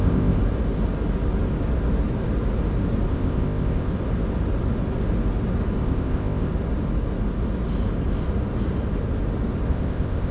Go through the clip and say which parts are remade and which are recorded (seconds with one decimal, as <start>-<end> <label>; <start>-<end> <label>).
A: 0.0-0.4 remade; 0.4-3.1 recorded; 3.1-3.9 remade; 3.9-5.8 recorded; 5.8-6.5 remade; 6.5-9.7 recorded; 9.7-10.3 remade